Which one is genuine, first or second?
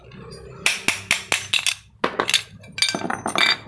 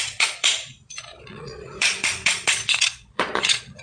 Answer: first